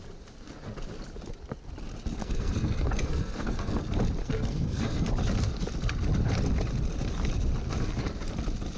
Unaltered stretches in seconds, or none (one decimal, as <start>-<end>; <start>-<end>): 0.0-2.2; 3.8-4.2; 5.1-8.8